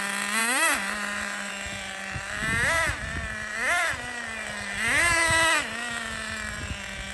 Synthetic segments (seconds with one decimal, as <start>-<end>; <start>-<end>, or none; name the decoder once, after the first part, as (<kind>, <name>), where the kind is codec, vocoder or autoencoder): 0.4-1.5 (vocoder, BigVGAN v2)